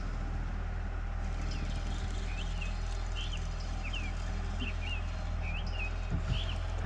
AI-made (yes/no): no